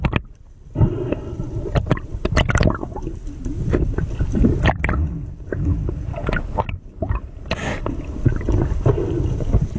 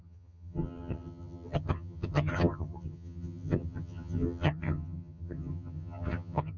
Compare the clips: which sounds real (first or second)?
first